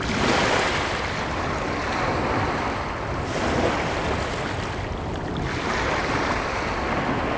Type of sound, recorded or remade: recorded